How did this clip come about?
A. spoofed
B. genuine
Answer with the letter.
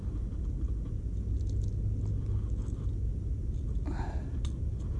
B